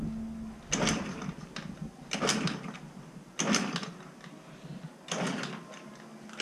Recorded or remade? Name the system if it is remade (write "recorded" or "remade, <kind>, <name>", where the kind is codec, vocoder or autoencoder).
recorded